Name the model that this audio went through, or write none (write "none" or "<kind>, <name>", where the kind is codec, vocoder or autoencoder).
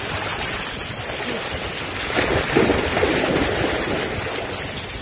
none